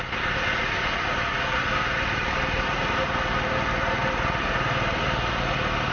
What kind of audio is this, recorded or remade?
recorded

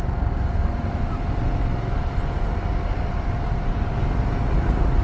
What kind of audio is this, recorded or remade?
recorded